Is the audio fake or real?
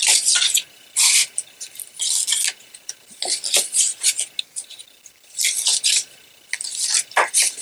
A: real